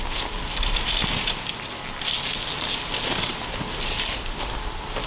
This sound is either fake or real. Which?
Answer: real